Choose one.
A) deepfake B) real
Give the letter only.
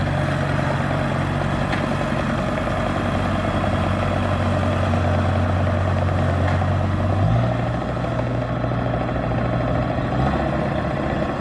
B